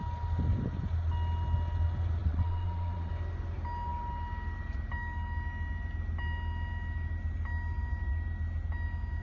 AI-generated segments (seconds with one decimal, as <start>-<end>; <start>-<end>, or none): 2.2-3.1

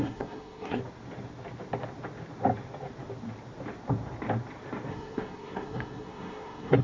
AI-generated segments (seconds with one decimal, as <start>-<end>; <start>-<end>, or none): 0.0-0.8; 4.9-6.8

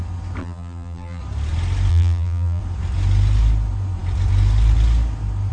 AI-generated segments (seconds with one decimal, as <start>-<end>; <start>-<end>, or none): 0.4-1.2; 1.9-2.6